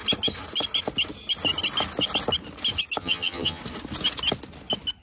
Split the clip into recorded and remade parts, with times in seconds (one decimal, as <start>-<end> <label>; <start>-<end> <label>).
0.0-3.0 recorded; 3.0-3.6 remade; 3.6-5.0 recorded